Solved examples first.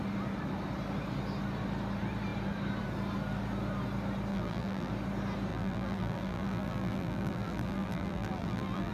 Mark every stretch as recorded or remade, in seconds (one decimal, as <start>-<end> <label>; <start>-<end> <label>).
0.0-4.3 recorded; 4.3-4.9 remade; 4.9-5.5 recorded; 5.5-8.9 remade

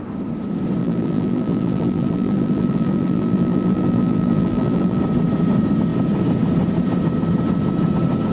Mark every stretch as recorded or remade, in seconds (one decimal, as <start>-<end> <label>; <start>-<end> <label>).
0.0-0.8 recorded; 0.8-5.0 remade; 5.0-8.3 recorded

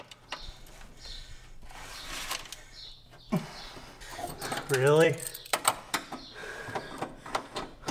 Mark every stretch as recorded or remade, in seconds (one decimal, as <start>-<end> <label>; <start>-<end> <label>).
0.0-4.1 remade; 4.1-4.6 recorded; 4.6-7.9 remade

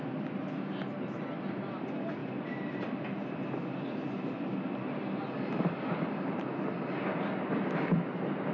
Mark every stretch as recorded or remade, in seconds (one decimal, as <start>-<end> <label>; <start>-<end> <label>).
0.0-8.5 recorded

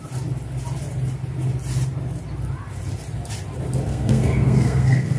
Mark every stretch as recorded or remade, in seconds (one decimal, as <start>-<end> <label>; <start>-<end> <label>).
0.0-3.9 recorded; 3.9-5.2 remade